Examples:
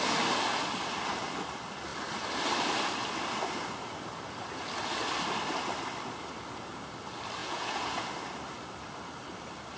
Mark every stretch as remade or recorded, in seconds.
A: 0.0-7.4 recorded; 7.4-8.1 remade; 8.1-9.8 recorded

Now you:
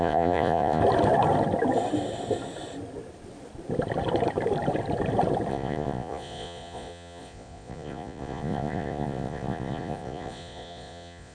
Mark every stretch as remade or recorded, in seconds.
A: 0.0-0.8 remade; 0.8-5.5 recorded; 5.5-11.3 remade